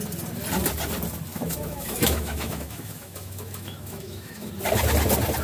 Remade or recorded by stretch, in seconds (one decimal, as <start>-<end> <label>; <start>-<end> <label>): 0.0-1.3 recorded; 1.3-4.5 remade; 4.5-5.4 recorded